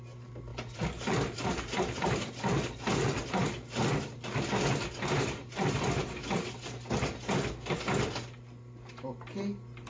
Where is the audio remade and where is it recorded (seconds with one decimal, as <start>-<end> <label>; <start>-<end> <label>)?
0.0-0.5 recorded; 0.5-2.3 remade; 2.3-9.9 recorded

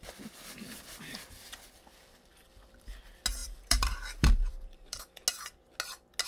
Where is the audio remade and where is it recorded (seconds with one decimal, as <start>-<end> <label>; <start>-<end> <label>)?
0.0-3.4 recorded; 3.4-5.0 remade; 5.0-6.3 recorded

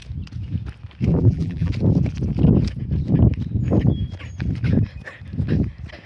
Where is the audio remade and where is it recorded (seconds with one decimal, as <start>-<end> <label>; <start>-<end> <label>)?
0.0-1.1 recorded; 1.1-1.7 remade; 1.7-6.1 recorded

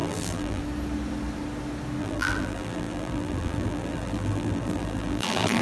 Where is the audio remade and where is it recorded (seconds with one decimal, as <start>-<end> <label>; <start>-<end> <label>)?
0.0-0.6 remade; 0.6-2.0 recorded; 2.0-5.6 remade

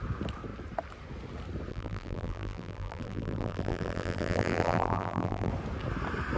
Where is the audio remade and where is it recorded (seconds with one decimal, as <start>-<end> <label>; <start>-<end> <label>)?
0.0-1.7 recorded; 1.7-5.5 remade; 5.5-6.4 recorded

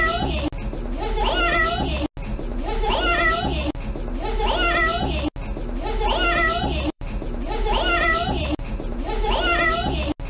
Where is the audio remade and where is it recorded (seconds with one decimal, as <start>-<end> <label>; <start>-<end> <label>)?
0.0-2.3 recorded; 2.3-3.4 remade; 3.4-6.9 recorded; 6.9-9.7 remade; 9.7-10.3 recorded

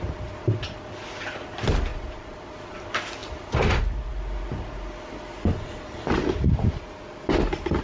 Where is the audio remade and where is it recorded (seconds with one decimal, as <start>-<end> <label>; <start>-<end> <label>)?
0.0-1.9 recorded; 1.9-2.6 remade; 2.6-3.2 recorded; 3.2-3.8 remade; 3.8-7.8 recorded

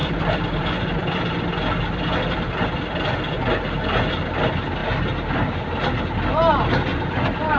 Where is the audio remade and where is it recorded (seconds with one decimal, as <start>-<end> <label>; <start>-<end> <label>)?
0.0-3.4 remade; 3.4-6.9 recorded; 6.9-7.6 remade